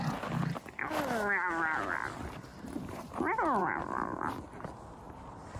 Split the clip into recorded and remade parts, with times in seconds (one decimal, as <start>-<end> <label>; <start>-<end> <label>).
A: 0.0-2.5 recorded; 2.5-3.1 remade; 3.1-3.6 recorded; 3.6-4.3 remade; 4.3-5.6 recorded